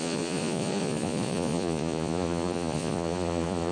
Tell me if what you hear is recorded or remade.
remade